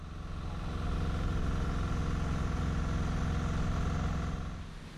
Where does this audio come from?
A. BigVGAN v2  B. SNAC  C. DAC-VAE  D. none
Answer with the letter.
D